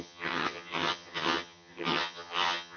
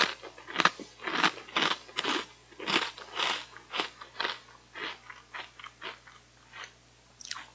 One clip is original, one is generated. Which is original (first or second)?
second